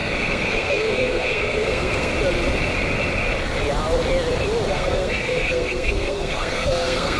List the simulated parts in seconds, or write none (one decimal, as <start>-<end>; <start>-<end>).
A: 0.0-2.1; 4.7-7.2